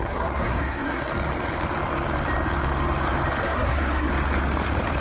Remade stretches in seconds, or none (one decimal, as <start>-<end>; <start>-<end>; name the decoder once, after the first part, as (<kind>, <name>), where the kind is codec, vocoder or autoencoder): 0.0-1.1 (codec, SNAC); 3.4-4.1